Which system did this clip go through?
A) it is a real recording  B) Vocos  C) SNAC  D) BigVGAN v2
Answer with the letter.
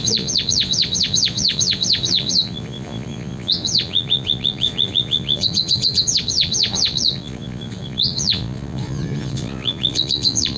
B